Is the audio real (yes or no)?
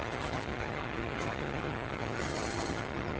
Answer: no